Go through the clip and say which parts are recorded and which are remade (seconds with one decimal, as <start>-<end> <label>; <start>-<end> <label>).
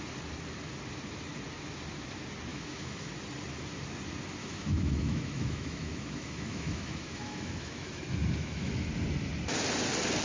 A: 0.0-2.5 recorded; 2.5-3.1 remade; 3.1-4.4 recorded; 4.4-8.0 remade; 8.0-8.4 recorded; 8.4-8.9 remade; 8.9-10.2 recorded